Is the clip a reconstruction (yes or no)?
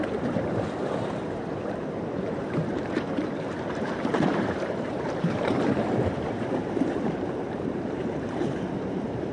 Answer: yes